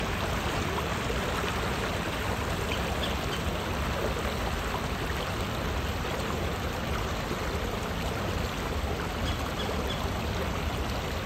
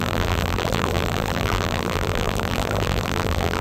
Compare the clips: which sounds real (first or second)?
first